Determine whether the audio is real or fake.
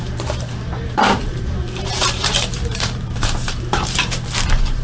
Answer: fake